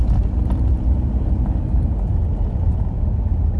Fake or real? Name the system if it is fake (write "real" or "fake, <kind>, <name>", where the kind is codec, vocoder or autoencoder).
real